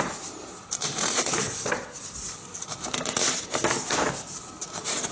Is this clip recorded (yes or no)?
yes